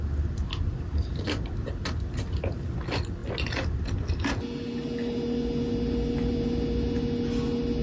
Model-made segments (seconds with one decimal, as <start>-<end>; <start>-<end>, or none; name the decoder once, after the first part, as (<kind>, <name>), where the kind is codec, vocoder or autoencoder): none